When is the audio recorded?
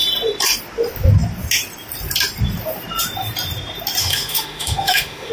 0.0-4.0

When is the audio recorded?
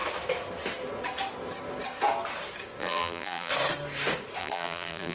0.0-2.8; 3.5-4.4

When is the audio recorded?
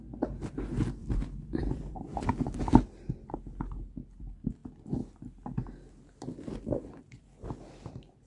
0.0-1.0; 2.6-8.3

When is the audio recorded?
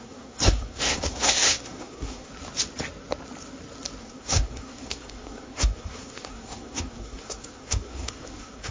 2.3-4.0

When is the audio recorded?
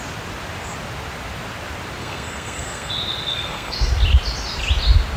0.0-2.0; 2.9-3.3; 3.9-5.2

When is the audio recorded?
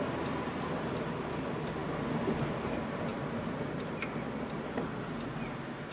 0.0-5.9